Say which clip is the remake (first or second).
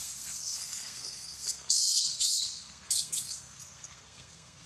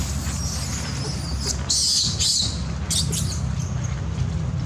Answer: first